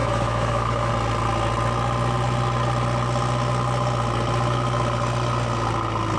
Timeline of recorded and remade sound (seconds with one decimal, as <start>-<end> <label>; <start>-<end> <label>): 0.0-0.9 remade; 0.9-6.2 recorded